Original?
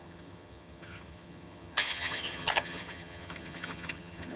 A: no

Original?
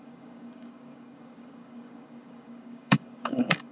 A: no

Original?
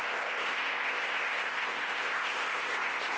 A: no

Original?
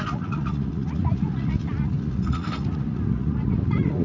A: no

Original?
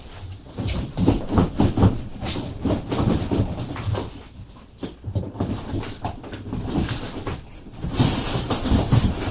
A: no